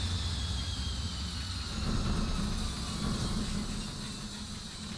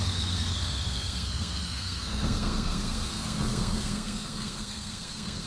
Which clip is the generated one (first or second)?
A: second